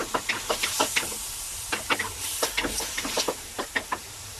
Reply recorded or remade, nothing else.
recorded